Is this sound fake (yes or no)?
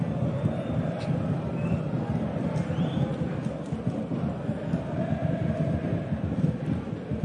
no